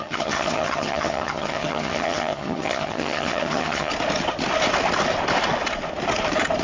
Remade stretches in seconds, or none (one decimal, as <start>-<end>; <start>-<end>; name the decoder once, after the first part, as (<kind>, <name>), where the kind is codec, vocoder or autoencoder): 0.0-3.9 (vocoder, HiFi-GAN)